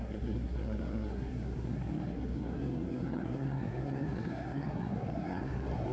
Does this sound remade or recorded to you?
remade